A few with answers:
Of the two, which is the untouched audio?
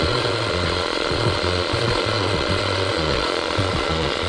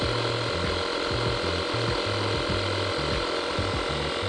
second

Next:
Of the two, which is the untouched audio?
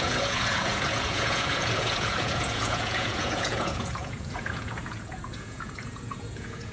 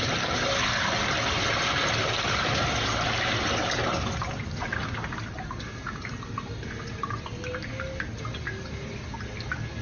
second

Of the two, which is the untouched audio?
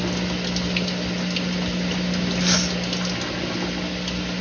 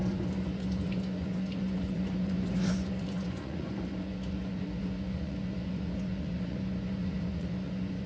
first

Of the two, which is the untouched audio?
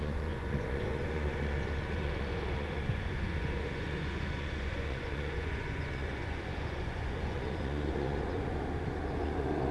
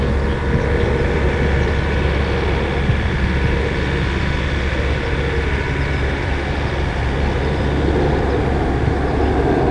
second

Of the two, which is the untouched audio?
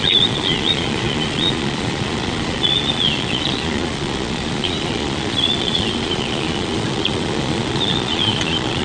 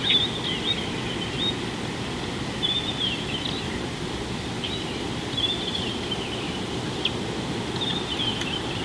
second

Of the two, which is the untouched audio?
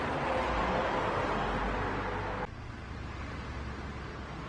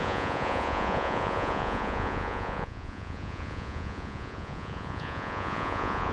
first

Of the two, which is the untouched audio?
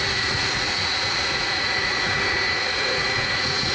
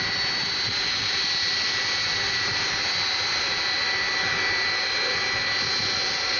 second